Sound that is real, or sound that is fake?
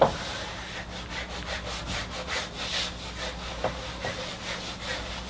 real